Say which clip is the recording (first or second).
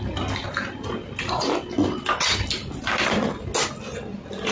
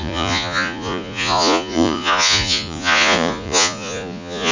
first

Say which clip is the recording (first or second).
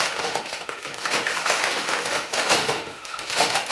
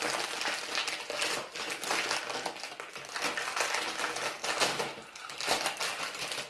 second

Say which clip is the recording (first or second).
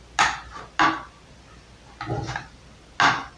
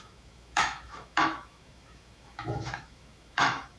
first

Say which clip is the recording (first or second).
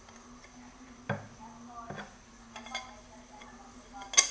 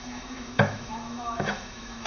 first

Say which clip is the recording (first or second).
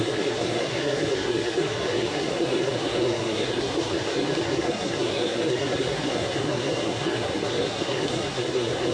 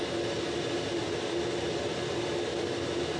second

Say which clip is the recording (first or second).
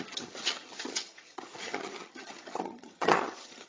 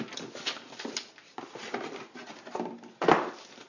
second